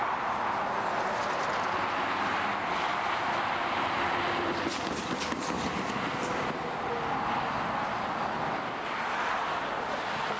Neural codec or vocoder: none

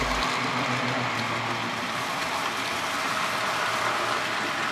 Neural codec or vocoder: none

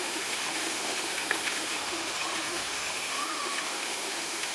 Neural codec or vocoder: autoencoder, DAC-VAE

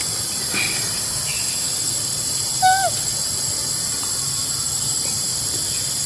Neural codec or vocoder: none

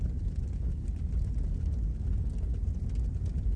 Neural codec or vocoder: none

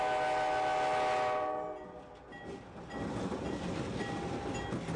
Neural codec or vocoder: none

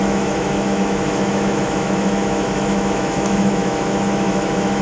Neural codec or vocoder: autoencoder, DAC-VAE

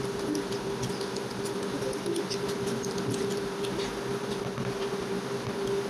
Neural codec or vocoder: none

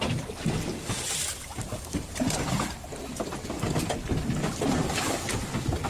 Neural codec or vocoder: none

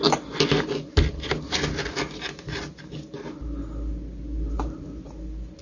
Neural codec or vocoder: none